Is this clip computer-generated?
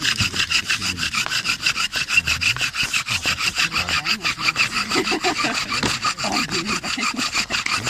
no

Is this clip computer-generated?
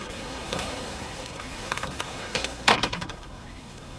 yes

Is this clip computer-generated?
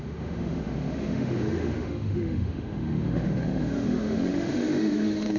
yes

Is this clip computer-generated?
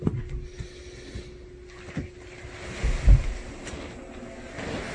no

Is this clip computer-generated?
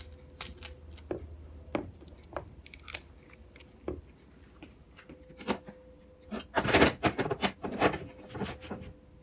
no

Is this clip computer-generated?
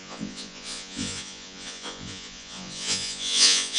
yes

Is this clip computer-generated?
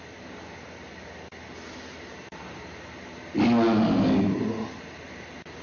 no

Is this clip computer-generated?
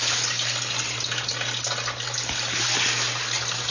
no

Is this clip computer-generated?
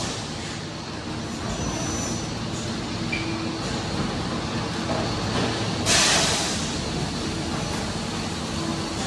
no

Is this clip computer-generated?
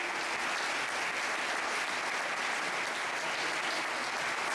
no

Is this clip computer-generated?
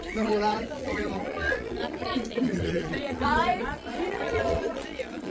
yes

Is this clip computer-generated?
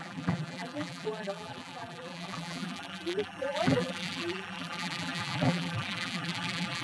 yes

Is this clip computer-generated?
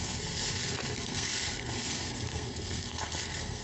yes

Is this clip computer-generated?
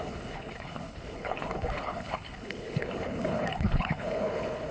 yes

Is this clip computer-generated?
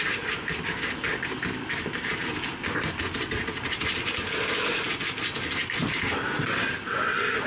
no